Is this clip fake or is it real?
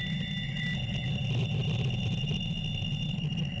real